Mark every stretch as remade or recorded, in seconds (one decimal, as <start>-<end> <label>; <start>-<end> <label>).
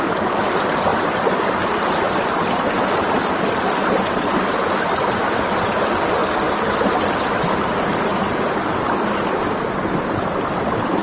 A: 0.0-11.0 recorded